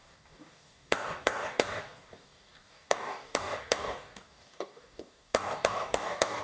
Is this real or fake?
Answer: fake